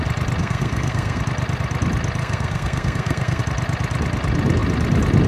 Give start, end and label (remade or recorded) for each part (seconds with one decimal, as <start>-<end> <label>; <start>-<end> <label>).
0.0-0.4 recorded; 0.4-1.2 remade; 1.2-2.2 recorded; 2.2-3.4 remade; 3.4-5.3 recorded